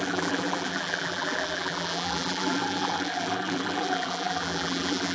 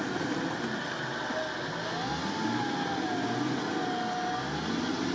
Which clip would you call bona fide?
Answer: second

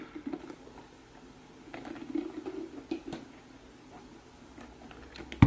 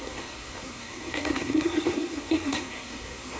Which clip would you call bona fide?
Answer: first